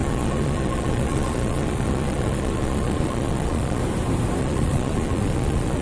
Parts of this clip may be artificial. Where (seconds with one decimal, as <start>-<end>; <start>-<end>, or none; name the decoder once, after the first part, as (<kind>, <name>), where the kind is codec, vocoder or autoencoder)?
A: 0.0-3.8 (vocoder, Vocos); 4.4-5.8